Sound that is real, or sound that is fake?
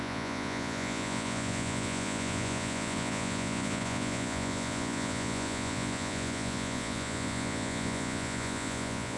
fake